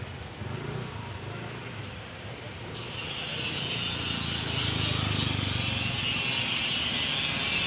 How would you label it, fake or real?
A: real